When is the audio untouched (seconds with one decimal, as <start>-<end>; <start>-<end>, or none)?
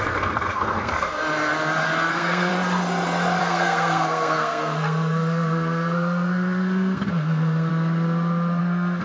1.2-2.1; 2.5-3.4; 7.7-8.6